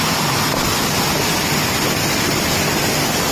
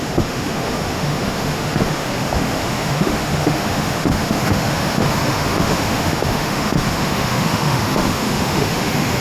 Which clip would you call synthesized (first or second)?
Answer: second